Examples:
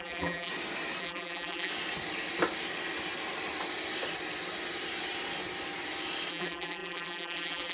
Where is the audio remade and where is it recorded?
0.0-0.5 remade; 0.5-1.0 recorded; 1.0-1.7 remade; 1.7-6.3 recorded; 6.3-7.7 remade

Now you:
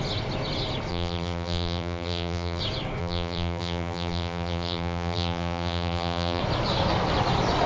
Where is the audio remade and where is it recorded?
0.0-0.9 recorded; 0.9-2.6 remade; 2.6-3.0 recorded; 3.0-6.4 remade; 6.4-7.7 recorded

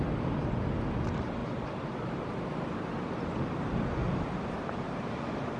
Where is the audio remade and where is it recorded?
0.0-1.4 recorded; 1.4-2.7 remade; 2.7-4.0 recorded; 4.0-5.1 remade; 5.1-5.6 recorded

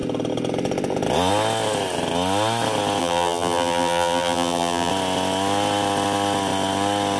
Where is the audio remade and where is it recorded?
0.0-3.0 recorded; 3.0-4.9 remade; 4.9-7.2 recorded

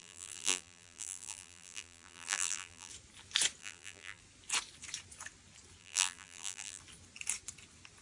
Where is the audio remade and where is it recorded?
0.0-2.9 remade; 2.9-3.6 recorded; 3.6-4.2 remade; 4.2-5.8 recorded; 5.8-6.8 remade; 6.8-8.0 recorded